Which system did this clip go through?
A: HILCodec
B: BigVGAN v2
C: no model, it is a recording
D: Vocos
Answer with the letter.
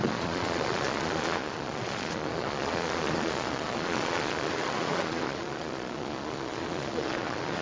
D